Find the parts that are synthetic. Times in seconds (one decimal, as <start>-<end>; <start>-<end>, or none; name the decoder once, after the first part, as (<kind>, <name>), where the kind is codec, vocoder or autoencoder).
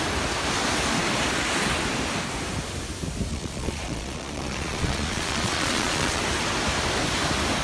3.3-6.2 (vocoder, Vocos)